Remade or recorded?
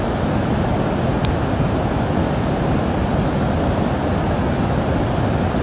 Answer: recorded